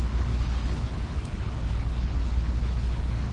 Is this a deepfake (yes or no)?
yes